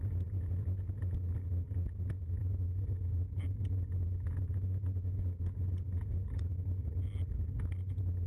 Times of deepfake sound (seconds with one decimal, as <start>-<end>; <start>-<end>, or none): none